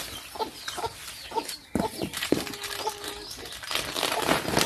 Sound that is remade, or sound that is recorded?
recorded